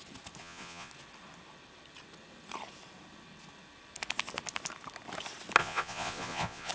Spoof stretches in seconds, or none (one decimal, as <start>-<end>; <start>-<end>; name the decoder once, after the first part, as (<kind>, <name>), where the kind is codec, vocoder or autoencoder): 0.4-0.9 (vocoder, Vocos); 5.6-6.7